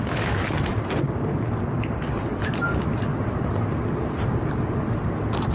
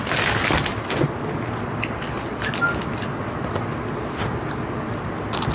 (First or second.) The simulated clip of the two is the first